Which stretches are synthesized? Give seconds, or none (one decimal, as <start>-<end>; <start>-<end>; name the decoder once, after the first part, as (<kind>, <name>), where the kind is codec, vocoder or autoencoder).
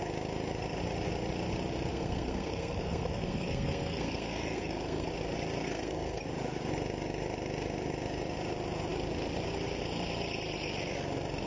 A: 1.9-5.1 (codec, SNAC); 5.6-6.2